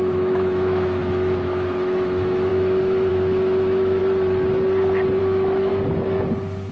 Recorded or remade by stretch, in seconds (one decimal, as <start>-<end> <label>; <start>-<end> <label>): 0.0-4.0 remade; 4.0-5.2 recorded; 5.2-5.7 remade; 5.7-6.7 recorded